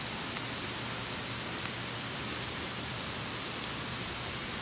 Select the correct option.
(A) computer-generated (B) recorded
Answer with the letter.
B